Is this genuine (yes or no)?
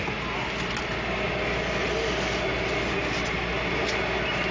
yes